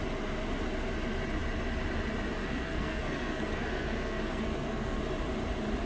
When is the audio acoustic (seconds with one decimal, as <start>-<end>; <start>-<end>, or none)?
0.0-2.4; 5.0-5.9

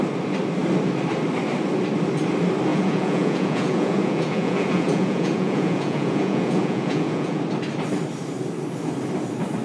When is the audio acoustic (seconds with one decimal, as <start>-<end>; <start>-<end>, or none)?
0.0-2.7; 7.4-9.6

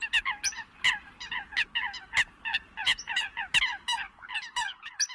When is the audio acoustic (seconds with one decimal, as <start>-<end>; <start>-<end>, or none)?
0.0-5.1

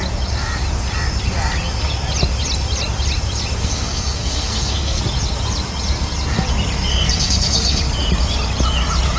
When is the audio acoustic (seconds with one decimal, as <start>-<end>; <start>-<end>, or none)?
0.0-3.6; 5.0-6.9; 7.8-9.2

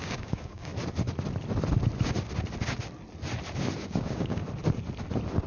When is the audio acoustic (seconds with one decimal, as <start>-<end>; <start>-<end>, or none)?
0.7-4.0; 4.4-5.5

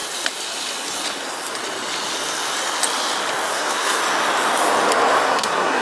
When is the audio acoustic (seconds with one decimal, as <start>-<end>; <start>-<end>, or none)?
0.0-3.5; 4.0-5.2